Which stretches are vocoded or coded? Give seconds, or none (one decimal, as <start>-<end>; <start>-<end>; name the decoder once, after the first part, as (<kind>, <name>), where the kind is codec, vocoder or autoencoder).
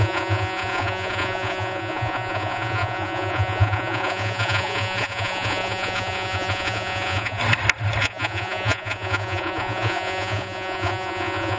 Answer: 0.0-7.4 (vocoder, Vocos); 8.0-11.6